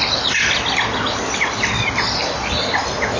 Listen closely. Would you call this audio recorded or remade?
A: recorded